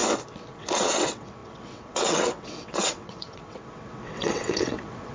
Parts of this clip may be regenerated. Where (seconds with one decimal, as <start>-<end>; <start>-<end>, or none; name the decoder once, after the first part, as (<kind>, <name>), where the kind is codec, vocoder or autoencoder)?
0.5-5.1 (vocoder, WaveNeXt)

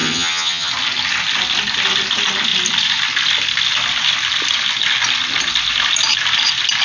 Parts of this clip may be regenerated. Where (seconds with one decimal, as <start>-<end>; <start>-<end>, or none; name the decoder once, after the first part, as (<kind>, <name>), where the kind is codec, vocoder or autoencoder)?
0.0-0.7 (vocoder, HiFi-GAN)

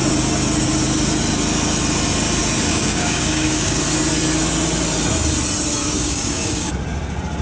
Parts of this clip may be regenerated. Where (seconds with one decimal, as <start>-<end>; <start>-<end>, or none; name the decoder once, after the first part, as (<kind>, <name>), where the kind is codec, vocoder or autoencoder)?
2.7-3.8 (codec, DAC); 5.8-6.7

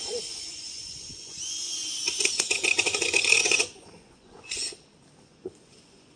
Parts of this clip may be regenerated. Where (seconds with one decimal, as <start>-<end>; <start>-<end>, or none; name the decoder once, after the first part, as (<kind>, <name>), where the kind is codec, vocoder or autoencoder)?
0.0-4.6 (vocoder, Vocos); 5.2-6.2

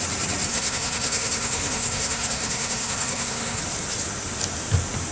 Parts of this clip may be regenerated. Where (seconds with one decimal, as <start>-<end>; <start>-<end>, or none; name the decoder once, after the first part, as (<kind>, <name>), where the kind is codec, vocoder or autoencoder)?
0.5-3.6 (codec, SNAC)

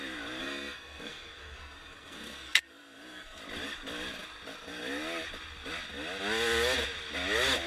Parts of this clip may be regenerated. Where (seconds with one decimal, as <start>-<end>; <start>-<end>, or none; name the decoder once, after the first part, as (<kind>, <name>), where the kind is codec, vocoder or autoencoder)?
0.4-3.4 (codec, SNAC)

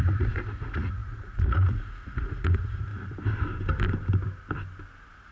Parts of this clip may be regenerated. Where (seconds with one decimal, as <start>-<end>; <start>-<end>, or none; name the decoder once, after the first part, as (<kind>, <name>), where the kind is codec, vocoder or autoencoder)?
0.0-2.9 (vocoder, Vocos)

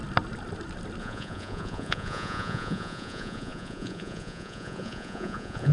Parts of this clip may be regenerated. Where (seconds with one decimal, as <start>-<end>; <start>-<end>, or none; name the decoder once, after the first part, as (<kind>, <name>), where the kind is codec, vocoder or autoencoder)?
1.0-5.7 (vocoder, Vocos)